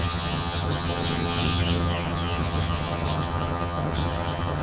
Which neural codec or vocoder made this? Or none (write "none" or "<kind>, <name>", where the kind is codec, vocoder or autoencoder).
vocoder, HiFi-GAN